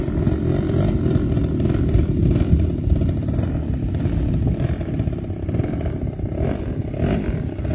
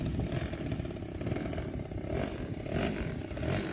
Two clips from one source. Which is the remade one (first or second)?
second